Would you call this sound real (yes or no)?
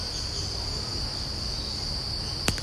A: yes